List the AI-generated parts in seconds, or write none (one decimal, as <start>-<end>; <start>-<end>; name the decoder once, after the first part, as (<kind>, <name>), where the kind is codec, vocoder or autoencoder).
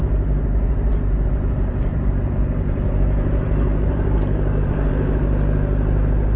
1.9-4.9 (vocoder, BigVGAN v2)